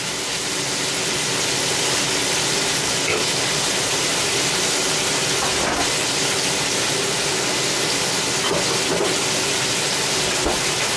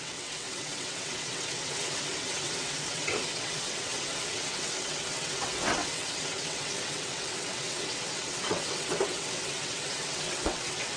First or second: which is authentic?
first